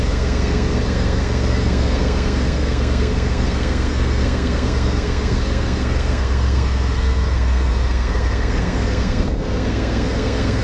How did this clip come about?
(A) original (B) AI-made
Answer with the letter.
B